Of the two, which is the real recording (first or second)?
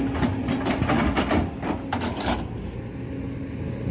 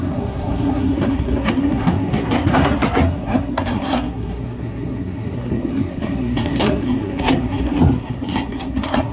first